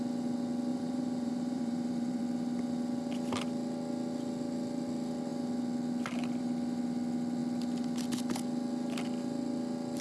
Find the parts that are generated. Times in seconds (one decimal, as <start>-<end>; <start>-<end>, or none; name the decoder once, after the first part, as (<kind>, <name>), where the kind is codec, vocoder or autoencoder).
0.7-2.2 (vocoder, BigVGAN v2)